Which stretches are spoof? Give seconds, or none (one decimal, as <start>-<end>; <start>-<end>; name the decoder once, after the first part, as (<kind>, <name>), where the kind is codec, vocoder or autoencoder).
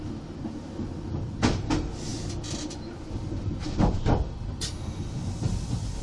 none